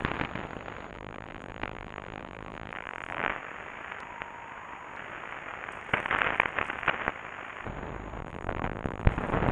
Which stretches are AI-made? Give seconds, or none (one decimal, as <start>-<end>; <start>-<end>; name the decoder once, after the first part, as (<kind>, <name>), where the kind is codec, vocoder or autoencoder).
0.9-3.3 (vocoder, BigVGAN v2); 8.2-9.1